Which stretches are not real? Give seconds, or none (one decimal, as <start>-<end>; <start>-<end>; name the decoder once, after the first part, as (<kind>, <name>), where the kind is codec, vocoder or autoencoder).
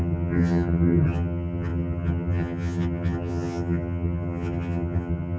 0.0-5.4 (vocoder, HiFi-GAN)